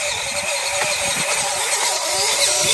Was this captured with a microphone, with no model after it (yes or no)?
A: no